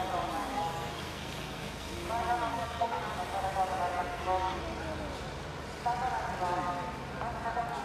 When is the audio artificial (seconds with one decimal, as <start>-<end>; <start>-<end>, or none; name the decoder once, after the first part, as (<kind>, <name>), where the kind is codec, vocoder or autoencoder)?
0.4-2.1 (codec, SNAC); 2.5-3.0; 4.1-4.6